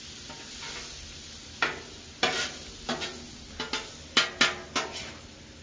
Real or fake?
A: real